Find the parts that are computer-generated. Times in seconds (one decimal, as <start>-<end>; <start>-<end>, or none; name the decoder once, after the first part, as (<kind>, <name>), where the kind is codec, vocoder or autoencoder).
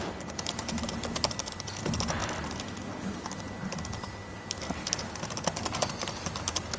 none